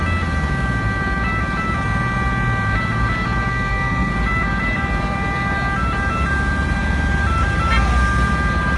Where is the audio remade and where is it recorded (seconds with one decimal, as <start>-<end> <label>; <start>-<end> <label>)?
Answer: 0.0-3.5 recorded; 3.5-4.1 remade; 4.1-8.8 recorded